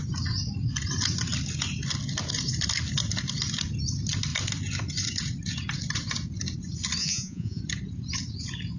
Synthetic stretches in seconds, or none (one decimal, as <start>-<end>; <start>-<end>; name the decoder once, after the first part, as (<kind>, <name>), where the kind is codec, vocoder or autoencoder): 7.0-7.6 (vocoder, Vocos)